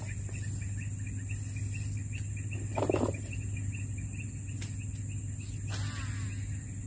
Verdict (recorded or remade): recorded